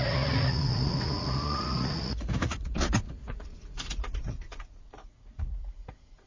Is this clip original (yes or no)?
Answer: no